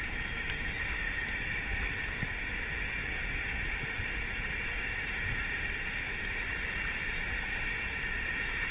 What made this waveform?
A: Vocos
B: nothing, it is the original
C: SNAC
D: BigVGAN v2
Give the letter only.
B